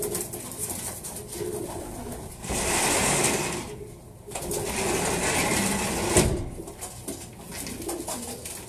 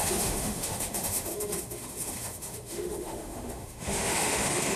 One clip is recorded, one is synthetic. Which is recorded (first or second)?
first